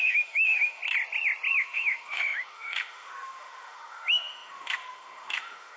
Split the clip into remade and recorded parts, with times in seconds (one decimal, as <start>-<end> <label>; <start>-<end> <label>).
0.0-0.8 remade; 0.8-1.6 recorded; 1.6-5.8 remade